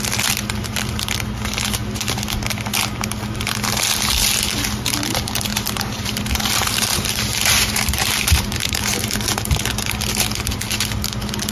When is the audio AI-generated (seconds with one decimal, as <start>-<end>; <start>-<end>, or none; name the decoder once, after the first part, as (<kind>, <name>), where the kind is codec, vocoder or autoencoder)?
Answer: 5.5-9.1 (vocoder, BigVGAN v2)